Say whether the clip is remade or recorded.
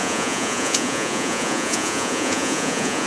remade